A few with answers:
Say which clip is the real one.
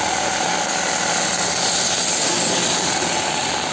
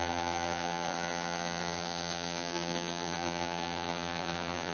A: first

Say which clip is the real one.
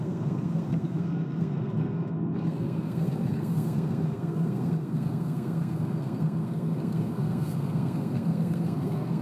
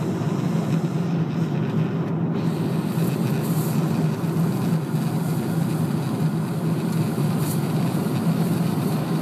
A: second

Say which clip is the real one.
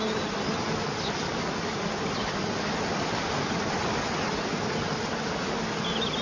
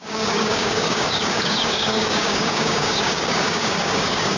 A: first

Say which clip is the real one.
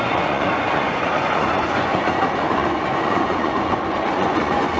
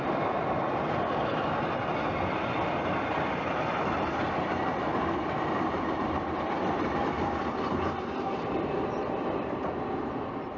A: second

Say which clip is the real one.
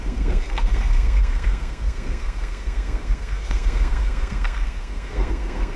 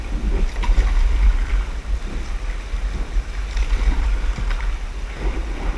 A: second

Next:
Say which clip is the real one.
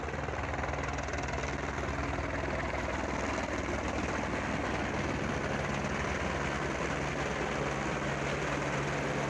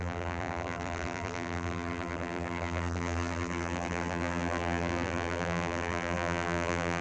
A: first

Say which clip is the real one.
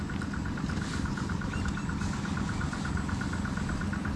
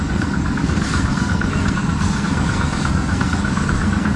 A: first